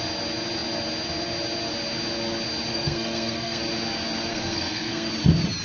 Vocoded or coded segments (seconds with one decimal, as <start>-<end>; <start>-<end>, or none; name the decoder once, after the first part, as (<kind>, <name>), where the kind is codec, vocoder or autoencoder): 2.7-3.6 (codec, SNAC); 4.3-5.1